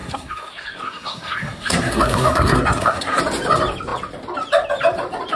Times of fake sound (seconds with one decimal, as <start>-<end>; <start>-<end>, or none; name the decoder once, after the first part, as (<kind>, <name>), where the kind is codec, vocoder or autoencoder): 0.0-3.2 (codec, SNAC)

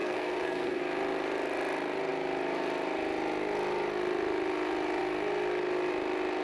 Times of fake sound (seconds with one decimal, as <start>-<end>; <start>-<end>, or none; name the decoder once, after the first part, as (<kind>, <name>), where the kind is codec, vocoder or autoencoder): 0.0-0.8 (codec, SNAC)

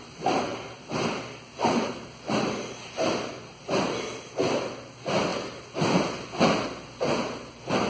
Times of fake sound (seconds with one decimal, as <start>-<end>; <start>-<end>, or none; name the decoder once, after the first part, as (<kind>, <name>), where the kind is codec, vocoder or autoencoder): none

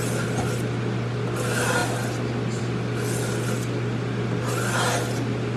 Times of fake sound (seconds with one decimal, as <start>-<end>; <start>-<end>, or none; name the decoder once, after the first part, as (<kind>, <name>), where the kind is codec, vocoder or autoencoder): none

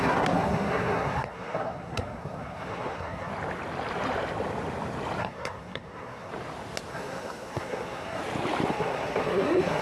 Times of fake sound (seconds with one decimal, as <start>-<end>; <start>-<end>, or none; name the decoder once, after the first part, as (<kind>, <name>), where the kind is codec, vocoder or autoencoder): 0.0-3.3 (codec, SNAC); 5.2-6.3; 6.9-8.2; 8.7-9.8

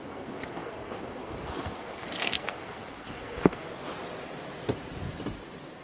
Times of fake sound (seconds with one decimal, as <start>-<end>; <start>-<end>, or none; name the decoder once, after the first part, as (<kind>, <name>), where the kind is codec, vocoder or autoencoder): 0.0-3.7 (codec, SNAC)